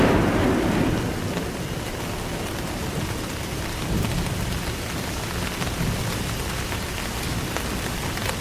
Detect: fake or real fake